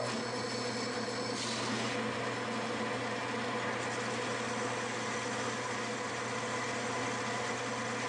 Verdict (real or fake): real